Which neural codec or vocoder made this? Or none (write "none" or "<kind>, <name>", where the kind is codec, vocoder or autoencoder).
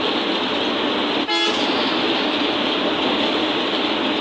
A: none